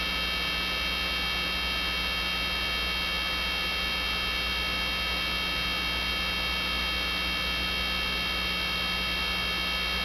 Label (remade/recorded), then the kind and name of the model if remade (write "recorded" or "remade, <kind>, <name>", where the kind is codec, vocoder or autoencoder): recorded